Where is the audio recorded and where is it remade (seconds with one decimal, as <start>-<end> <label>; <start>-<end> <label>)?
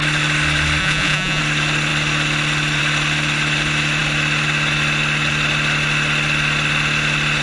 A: 0.0-0.8 recorded; 0.8-1.4 remade; 1.4-7.4 recorded